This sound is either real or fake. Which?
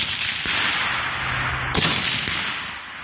real